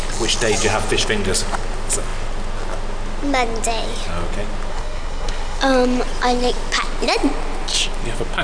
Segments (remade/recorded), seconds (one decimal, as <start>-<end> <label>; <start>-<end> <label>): 0.0-4.7 recorded; 4.7-5.6 remade; 5.6-8.4 recorded